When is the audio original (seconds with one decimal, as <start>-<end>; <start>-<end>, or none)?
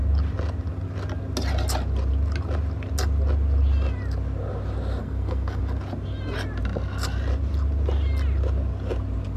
0.0-5.0; 5.6-9.4